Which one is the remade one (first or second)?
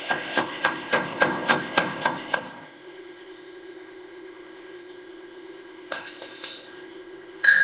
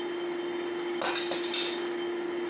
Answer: first